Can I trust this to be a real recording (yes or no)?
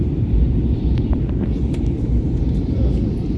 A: no